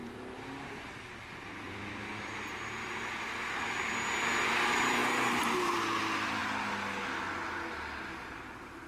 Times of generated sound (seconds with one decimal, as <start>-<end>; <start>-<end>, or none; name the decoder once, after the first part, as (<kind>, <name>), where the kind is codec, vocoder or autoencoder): none